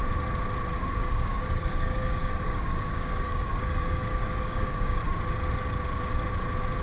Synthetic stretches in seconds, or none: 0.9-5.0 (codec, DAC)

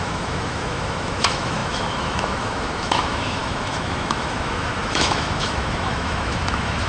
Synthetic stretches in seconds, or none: 0.0-6.9 (autoencoder, DAC-VAE)

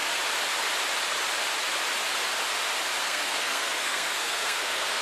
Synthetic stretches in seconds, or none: 3.0-5.0 (codec, SNAC)

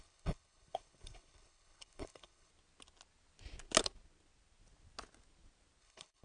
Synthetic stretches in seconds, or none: 0.0-2.5 (codec, HILCodec); 5.8-6.2

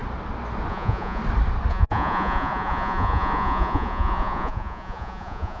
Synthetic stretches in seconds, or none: 0.7-1.2 (vocoder, Vocos); 1.7-5.6

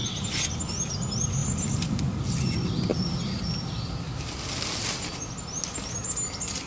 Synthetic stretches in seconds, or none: none

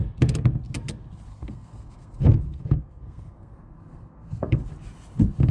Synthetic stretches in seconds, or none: 1.3-4.6 (codec, SNAC)

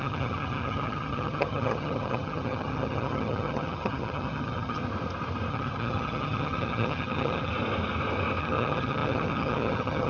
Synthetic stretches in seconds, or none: 0.0-4.8 (vocoder, HiFi-GAN); 5.5-7.5; 8.4-10.1